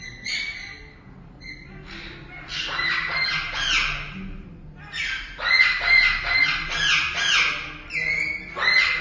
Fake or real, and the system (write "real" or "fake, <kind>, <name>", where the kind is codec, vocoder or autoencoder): real